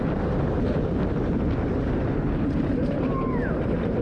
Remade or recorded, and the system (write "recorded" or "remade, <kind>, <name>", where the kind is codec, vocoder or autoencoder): remade, vocoder, BigVGAN v2